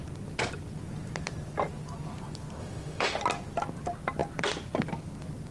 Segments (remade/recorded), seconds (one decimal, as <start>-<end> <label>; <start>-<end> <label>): 0.0-2.6 recorded; 2.6-3.2 remade; 3.2-5.5 recorded